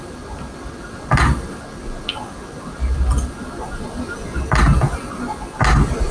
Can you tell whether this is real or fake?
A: real